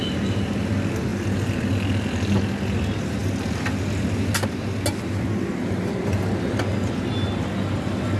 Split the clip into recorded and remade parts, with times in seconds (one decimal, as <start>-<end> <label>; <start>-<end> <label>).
0.0-8.2 recorded